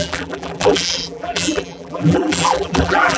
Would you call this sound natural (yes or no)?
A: no